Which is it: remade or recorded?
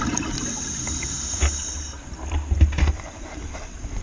recorded